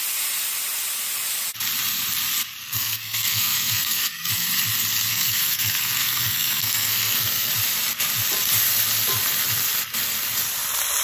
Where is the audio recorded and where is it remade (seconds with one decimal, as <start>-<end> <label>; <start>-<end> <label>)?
0.0-2.6 recorded; 2.6-4.3 remade; 4.3-5.1 recorded; 5.1-7.5 remade; 7.5-11.0 recorded

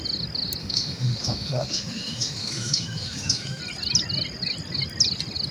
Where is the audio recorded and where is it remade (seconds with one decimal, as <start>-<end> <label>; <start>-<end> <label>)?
0.0-0.6 recorded; 0.6-3.6 remade; 3.6-5.5 recorded

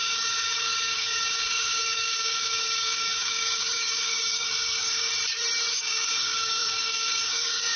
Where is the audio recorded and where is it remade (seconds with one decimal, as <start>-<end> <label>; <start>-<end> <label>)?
0.0-5.1 remade; 5.1-5.7 recorded; 5.7-7.8 remade

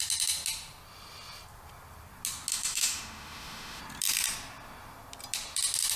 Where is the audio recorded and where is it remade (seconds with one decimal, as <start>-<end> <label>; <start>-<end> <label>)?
0.0-2.5 recorded; 2.5-3.8 remade; 3.8-6.0 recorded